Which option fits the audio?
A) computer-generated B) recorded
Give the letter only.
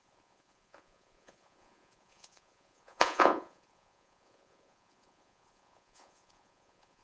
A